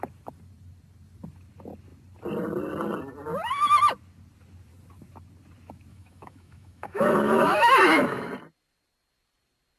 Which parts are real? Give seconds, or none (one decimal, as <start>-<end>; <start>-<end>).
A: 0.0-5.9; 8.3-9.8